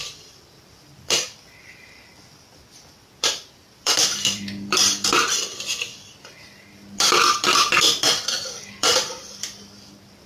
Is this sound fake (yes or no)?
yes